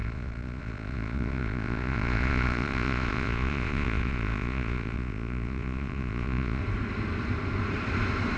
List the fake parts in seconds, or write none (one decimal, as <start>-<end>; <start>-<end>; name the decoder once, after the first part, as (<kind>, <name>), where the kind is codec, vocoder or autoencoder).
0.0-6.6 (vocoder, Vocos)

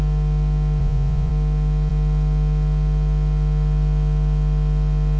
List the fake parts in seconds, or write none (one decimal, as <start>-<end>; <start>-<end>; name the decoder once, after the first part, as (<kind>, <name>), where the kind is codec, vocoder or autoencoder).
0.8-1.3 (vocoder, Vocos)

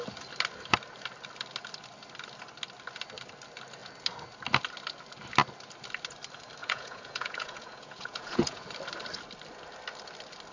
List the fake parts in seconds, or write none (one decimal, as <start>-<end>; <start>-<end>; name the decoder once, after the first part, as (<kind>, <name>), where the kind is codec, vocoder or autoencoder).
6.6-8.6 (vocoder, Vocos)

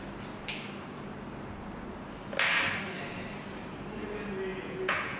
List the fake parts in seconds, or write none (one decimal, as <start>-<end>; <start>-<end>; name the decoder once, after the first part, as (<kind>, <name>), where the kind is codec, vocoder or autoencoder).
4.5-5.2 (vocoder, Vocos)

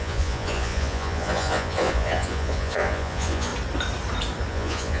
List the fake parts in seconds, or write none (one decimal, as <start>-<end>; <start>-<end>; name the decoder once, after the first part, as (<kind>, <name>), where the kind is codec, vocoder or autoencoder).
0.0-3.5 (vocoder, Vocos); 4.5-5.0

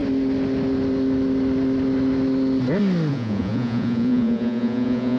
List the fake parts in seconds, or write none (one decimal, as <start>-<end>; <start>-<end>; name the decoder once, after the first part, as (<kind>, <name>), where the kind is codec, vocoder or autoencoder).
3.1-5.2 (vocoder, Vocos)

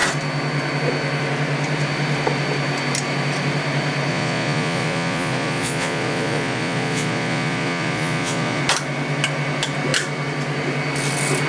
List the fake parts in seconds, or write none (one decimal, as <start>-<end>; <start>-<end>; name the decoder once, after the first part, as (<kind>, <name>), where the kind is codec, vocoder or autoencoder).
4.1-8.6 (vocoder, Vocos)